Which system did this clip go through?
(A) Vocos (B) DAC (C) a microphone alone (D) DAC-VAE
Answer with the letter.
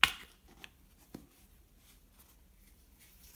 C